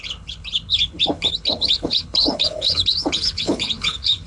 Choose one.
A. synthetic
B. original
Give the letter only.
A